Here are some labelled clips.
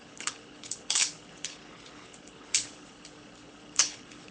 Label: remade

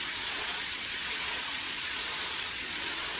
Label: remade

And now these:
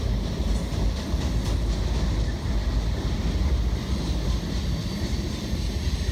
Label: recorded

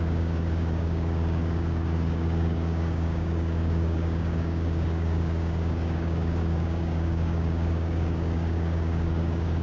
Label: remade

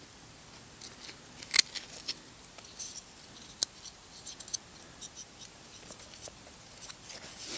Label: recorded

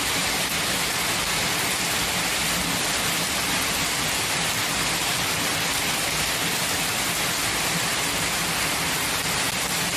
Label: recorded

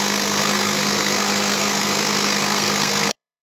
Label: remade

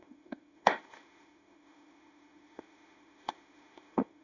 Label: remade